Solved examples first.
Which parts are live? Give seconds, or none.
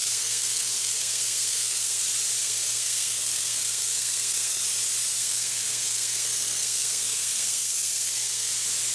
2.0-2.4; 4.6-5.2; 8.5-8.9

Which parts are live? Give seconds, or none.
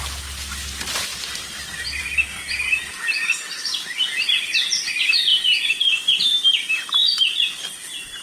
0.0-5.3; 6.5-8.2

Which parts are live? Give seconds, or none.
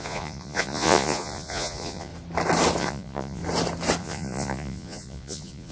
2.1-2.8; 3.4-4.0